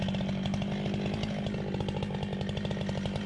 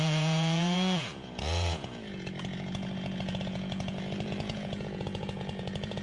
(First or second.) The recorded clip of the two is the first